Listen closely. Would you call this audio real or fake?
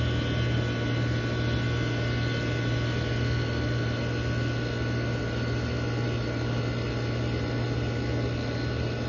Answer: real